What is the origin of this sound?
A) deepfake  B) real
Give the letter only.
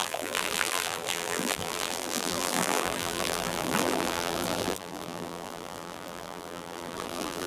A